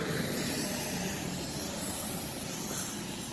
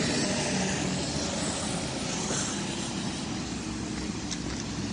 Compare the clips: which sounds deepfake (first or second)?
first